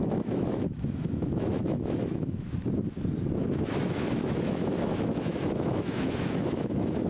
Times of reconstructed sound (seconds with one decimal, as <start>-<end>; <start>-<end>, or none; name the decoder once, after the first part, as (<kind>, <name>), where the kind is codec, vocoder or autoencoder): 0.0-2.6 (autoencoder, DAC-VAE); 3.4-7.1